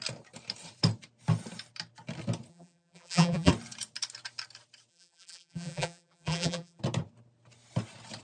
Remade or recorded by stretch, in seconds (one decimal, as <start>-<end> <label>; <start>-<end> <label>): 0.0-2.5 recorded; 2.5-3.5 remade; 3.5-4.9 recorded; 4.9-6.8 remade; 6.8-8.2 recorded